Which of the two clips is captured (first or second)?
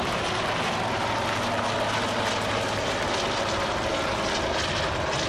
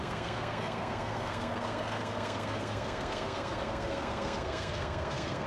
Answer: first